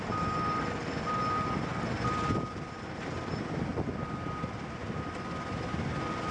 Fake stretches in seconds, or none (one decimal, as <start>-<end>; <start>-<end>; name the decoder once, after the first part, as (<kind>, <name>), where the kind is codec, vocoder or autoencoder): none